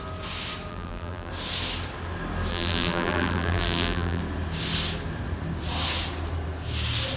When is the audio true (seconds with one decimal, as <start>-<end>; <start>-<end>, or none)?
0.0-0.7; 1.3-2.5; 4.2-7.2